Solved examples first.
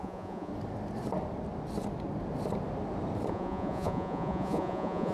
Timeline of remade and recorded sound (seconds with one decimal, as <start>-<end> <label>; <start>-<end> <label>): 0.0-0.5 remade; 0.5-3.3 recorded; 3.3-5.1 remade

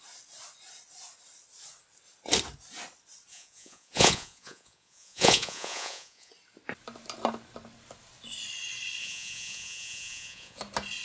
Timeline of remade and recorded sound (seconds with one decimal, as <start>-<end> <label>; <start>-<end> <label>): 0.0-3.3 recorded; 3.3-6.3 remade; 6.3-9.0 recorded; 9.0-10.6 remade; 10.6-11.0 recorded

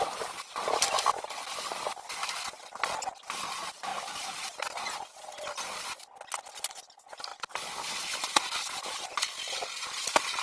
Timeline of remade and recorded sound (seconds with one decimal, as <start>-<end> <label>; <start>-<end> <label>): 0.0-10.4 recorded

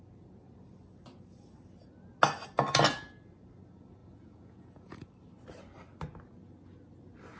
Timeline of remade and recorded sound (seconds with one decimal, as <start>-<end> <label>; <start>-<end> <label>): 0.0-4.0 recorded; 4.0-5.1 remade; 5.1-7.4 recorded

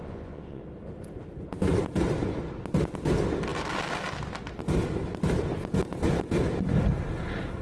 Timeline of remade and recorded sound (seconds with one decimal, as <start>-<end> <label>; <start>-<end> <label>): 0.0-0.6 remade; 0.6-7.6 recorded

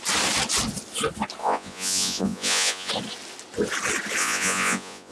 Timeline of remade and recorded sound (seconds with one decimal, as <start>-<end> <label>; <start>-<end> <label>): 0.0-1.4 recorded; 1.4-2.9 remade; 2.9-4.2 recorded; 4.2-5.1 remade